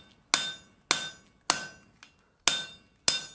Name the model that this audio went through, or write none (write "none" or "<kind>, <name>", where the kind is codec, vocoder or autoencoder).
none